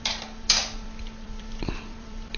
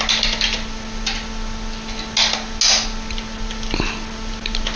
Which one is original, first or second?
second